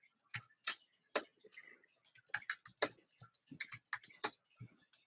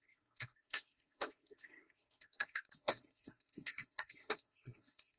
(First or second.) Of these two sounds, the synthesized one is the second